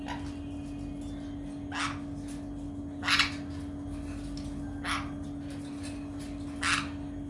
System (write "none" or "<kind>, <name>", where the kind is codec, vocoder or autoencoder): none